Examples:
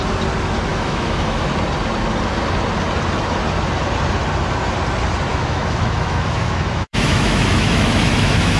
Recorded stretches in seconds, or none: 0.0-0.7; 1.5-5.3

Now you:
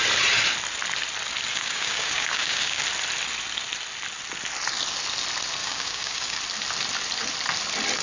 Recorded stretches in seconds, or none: 0.0-1.5; 2.8-5.6; 6.4-8.0

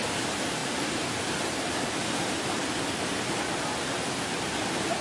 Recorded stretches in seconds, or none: 0.0-5.0

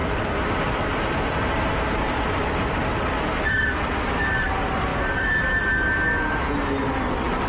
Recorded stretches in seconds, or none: 4.5-4.9; 5.6-7.5

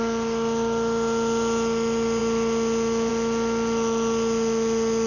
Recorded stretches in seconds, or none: 0.0-5.1

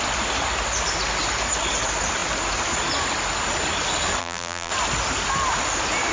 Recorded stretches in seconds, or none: 0.0-4.2; 4.7-6.1

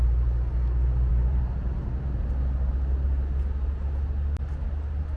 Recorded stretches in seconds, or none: 0.0-1.1; 2.2-5.2